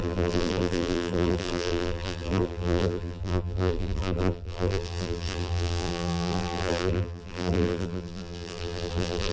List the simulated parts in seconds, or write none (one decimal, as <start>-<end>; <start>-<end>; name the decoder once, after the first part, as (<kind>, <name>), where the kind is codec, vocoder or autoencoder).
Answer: 0.0-9.3 (vocoder, BigVGAN v2)